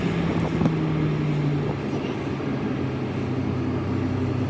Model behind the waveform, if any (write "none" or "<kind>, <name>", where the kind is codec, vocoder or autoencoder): none